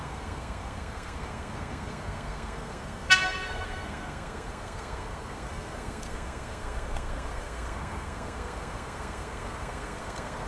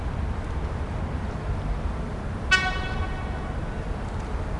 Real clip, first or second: second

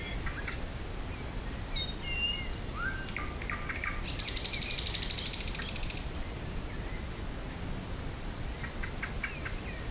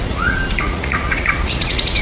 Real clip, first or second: first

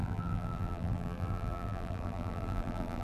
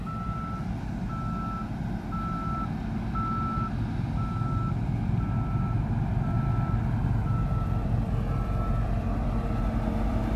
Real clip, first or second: second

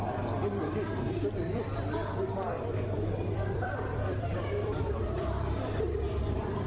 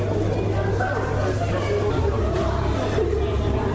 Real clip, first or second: second